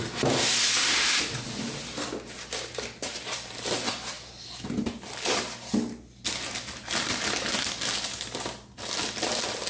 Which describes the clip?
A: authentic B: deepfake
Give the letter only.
A